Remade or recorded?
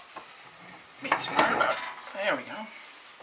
recorded